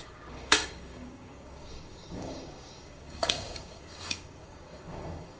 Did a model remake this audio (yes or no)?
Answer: yes